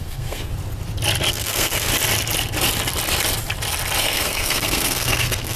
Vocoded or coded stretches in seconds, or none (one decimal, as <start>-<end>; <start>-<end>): 0.0-0.5; 1.3-1.9; 4.0-5.6